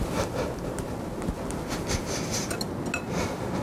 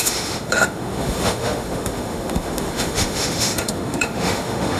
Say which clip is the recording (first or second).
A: first